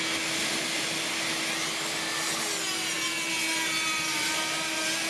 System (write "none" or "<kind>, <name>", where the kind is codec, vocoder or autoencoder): none